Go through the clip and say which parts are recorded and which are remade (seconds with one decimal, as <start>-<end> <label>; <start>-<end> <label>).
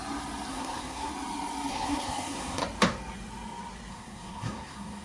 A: 0.0-0.5 recorded; 0.5-1.1 remade; 1.1-1.7 recorded; 1.7-2.6 remade; 2.6-3.9 recorded; 3.9-5.0 remade